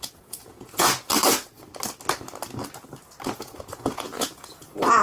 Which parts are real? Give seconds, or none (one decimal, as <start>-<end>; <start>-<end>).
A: 1.1-3.3